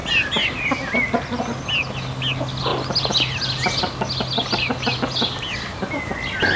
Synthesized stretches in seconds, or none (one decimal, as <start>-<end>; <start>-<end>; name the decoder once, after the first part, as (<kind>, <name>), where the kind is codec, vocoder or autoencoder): none